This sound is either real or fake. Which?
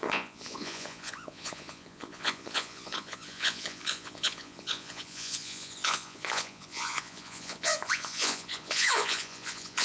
fake